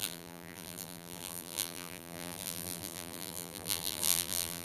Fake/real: fake